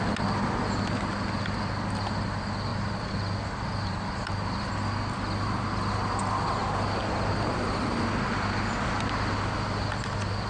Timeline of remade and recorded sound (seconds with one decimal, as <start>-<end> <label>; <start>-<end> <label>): 0.0-2.7 recorded; 2.7-4.7 remade; 4.7-10.5 recorded